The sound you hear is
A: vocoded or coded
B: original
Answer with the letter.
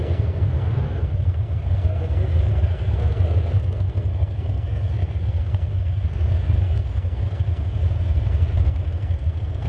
A